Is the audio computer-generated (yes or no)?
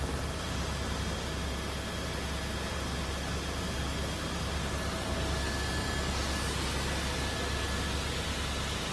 no